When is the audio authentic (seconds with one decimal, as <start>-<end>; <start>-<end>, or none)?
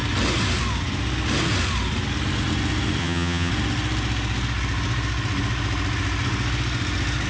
0.0-3.0; 3.5-7.3